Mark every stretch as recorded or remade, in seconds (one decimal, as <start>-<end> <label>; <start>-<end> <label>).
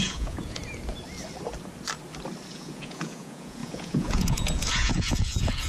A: 0.0-0.6 remade; 0.6-2.5 recorded; 2.5-5.7 remade